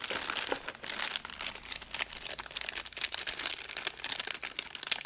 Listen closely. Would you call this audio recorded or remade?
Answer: recorded